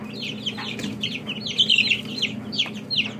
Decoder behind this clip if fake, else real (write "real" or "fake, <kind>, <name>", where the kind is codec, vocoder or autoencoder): real